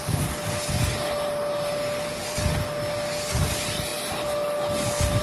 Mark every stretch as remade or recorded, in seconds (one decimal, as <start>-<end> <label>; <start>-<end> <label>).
0.0-5.2 recorded